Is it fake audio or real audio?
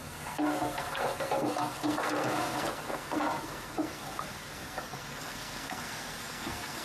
fake